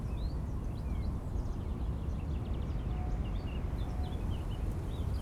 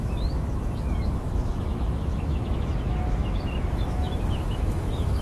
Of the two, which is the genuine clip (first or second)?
first